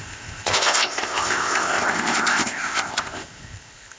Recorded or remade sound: remade